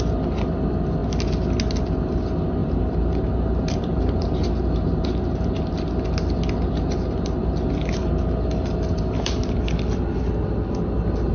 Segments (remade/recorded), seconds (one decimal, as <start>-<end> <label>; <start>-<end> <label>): 0.0-2.6 recorded; 2.6-5.6 remade; 5.6-11.3 recorded